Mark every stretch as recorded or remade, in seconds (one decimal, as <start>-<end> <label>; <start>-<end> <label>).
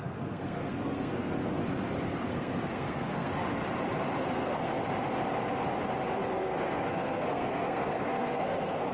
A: 0.0-1.6 remade; 1.6-2.3 recorded; 2.3-3.3 remade; 3.3-4.2 recorded; 4.2-4.8 remade; 4.8-6.3 recorded; 6.3-8.9 remade